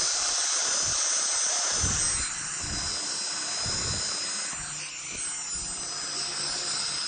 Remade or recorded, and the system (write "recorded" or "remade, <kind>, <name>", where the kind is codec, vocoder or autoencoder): recorded